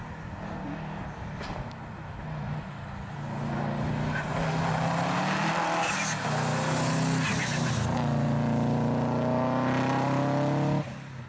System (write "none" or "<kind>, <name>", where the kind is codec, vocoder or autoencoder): none